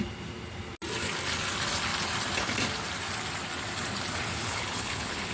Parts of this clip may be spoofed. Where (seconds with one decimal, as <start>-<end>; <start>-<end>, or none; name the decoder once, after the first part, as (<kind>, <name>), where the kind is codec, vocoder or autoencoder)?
4.3-5.3 (codec, HILCodec)